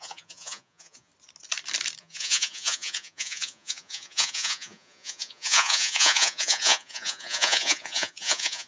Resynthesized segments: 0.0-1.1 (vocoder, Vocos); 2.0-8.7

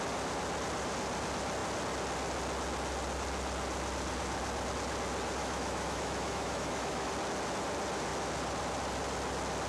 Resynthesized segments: 5.4-7.1 (autoencoder, DAC-VAE)